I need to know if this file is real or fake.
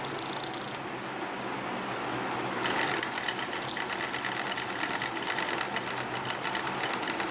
real